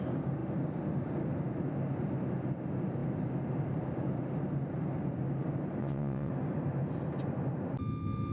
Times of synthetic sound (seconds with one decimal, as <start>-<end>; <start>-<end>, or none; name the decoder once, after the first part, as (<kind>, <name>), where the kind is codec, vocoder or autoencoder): 5.8-6.3 (vocoder, WaveNeXt)